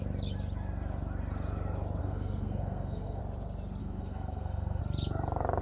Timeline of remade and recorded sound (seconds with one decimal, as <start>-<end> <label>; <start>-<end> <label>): 0.0-2.0 recorded; 2.0-3.2 remade; 3.2-3.8 recorded; 3.8-4.8 remade; 4.8-5.6 recorded